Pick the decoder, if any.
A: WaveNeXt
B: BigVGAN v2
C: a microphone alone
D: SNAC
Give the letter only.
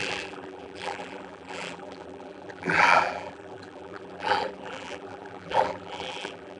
B